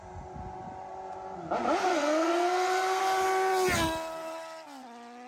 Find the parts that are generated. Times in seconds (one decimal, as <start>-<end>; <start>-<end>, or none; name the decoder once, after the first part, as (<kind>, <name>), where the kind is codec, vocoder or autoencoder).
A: 1.9-3.0 (codec, SNAC)